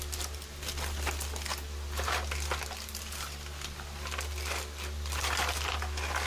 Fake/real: real